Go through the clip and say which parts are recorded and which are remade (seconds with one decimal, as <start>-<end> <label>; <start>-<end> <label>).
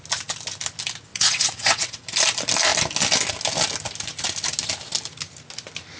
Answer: 0.0-1.1 recorded; 1.1-2.0 remade; 2.0-6.0 recorded